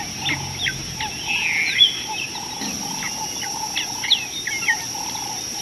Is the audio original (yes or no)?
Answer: yes